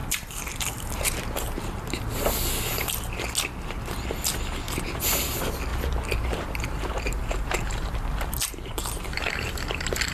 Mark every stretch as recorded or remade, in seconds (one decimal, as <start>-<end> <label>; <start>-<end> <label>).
0.0-2.0 remade; 2.0-5.7 recorded; 5.7-9.3 remade; 9.3-10.1 recorded